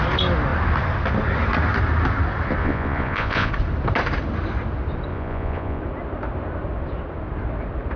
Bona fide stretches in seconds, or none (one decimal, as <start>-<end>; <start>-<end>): 0.0-2.6; 3.5-5.1; 5.8-8.0